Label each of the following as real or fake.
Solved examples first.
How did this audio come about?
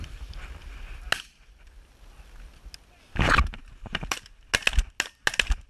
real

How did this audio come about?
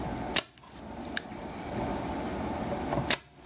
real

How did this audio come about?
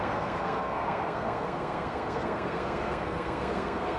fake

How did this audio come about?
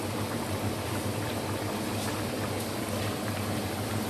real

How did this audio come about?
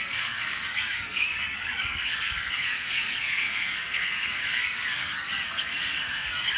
fake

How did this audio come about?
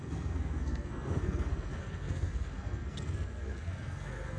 fake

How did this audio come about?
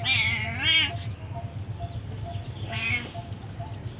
real